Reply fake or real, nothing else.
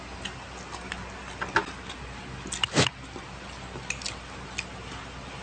real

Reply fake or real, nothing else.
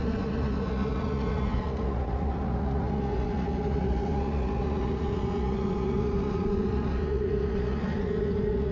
fake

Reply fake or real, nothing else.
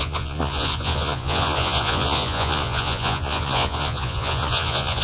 fake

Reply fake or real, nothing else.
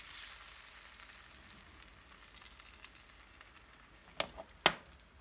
real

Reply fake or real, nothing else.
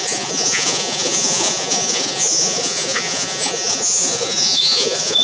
fake